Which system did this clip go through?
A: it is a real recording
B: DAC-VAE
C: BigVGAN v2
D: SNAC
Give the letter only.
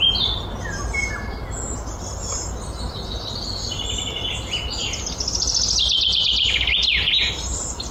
A